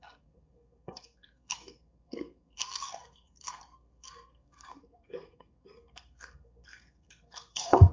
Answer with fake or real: fake